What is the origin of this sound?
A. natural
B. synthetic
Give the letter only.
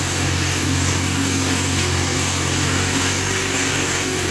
B